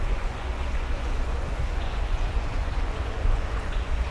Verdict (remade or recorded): remade